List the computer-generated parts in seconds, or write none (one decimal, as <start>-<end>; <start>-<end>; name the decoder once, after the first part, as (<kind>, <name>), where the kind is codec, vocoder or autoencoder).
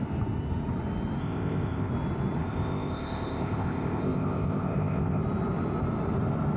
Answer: 1.2-1.9 (codec, ZipCodec); 2.4-5.2